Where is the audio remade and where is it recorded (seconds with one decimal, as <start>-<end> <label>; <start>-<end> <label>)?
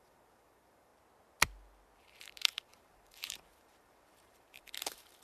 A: 0.0-0.9 remade; 0.9-2.0 recorded; 2.0-5.2 remade